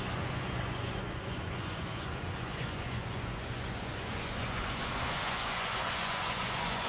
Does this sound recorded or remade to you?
remade